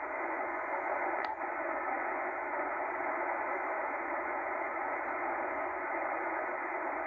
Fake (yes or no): yes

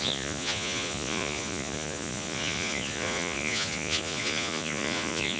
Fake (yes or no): yes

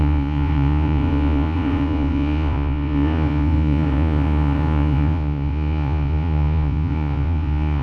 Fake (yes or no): yes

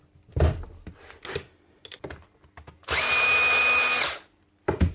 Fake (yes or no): no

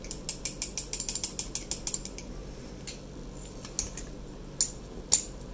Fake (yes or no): no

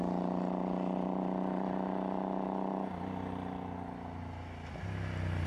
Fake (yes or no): no